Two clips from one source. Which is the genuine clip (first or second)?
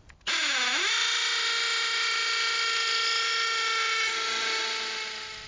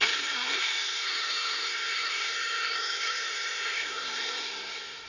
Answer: first